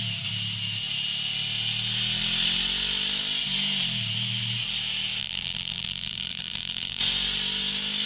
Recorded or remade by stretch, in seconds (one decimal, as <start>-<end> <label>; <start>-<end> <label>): 0.0-5.2 recorded; 5.2-7.0 remade; 7.0-8.1 recorded